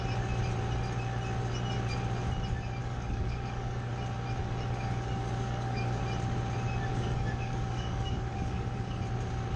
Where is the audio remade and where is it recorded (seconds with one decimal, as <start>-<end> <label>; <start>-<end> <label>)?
0.0-2.8 recorded; 2.8-3.9 remade; 3.9-4.4 recorded; 4.4-6.0 remade; 6.0-6.9 recorded; 6.9-9.0 remade; 9.0-9.6 recorded